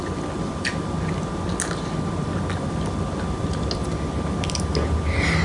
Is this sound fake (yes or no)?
no